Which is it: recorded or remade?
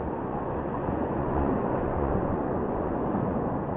remade